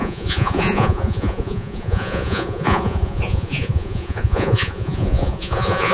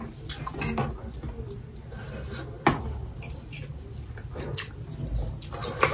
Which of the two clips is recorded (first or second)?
second